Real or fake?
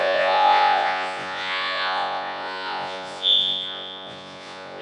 fake